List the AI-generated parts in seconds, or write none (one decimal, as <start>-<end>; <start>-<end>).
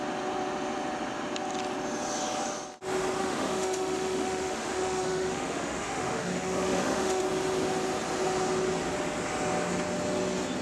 3.2-7.2